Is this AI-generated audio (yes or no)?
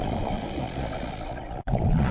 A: yes